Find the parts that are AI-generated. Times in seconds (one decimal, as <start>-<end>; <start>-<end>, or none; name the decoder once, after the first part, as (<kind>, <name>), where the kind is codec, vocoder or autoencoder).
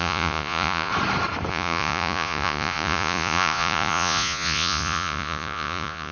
0.0-0.9 (vocoder, Vocos); 1.5-6.1